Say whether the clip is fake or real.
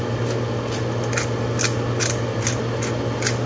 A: real